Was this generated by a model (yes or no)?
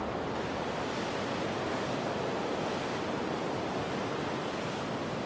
no